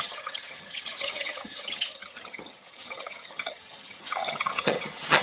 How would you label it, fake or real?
fake